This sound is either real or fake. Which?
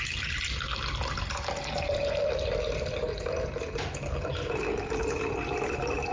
real